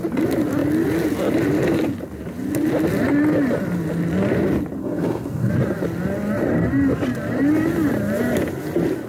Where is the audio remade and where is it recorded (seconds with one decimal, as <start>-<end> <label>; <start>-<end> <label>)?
0.0-4.8 recorded; 4.8-5.5 remade; 5.5-9.1 recorded